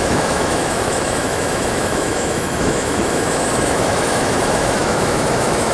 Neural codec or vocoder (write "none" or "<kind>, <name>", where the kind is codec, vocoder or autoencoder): autoencoder, DAC-VAE